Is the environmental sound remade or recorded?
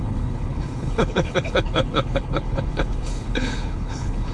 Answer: remade